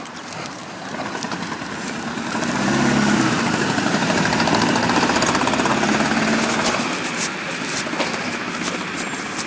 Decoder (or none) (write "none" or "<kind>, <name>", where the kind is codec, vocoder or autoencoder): none